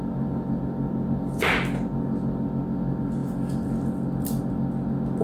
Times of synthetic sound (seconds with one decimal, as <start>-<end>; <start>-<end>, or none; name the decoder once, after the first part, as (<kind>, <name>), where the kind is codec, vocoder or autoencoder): none